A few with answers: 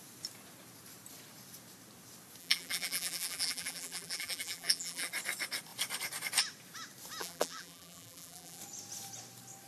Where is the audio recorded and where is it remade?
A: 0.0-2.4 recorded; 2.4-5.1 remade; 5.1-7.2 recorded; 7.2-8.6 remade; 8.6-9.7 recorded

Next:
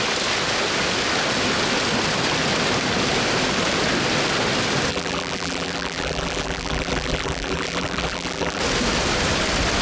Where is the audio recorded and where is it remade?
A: 0.0-4.9 recorded; 4.9-8.6 remade; 8.6-9.8 recorded

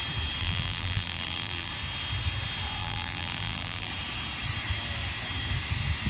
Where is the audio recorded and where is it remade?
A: 0.0-0.4 recorded; 0.4-1.7 remade; 1.7-2.8 recorded; 2.8-3.9 remade; 3.9-6.1 recorded

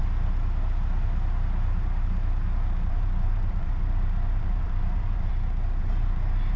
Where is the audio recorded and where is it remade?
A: 0.0-2.9 recorded; 2.9-5.3 remade; 5.3-5.8 recorded; 5.8-6.6 remade